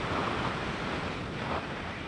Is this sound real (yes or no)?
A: yes